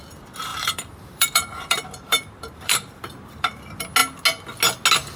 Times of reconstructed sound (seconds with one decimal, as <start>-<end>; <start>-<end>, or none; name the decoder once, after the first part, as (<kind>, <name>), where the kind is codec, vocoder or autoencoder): 0.5-3.6 (vocoder, BigVGAN v2)